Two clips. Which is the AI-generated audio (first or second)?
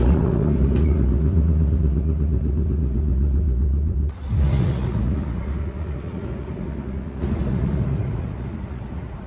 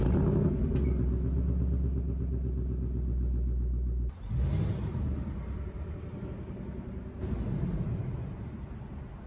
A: first